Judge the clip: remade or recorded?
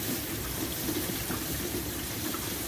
remade